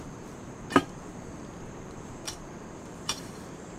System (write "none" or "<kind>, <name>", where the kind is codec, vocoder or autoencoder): vocoder, BigVGAN v2